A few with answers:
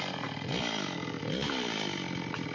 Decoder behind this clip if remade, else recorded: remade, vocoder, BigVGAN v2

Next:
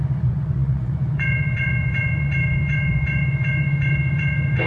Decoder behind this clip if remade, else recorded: remade, vocoder, Vocos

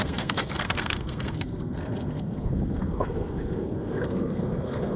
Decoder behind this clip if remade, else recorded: remade, codec, SNAC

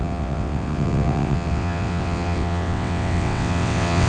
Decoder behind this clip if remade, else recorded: remade, vocoder, WaveNeXt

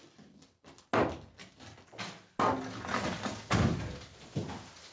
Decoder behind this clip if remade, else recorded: recorded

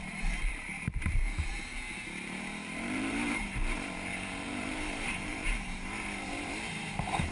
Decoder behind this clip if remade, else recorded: remade, vocoder, BigVGAN v2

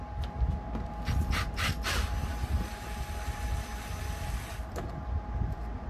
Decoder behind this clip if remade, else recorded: recorded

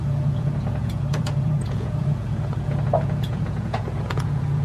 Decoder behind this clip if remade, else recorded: remade, vocoder, Vocos